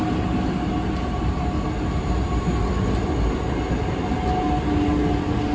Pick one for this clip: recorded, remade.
recorded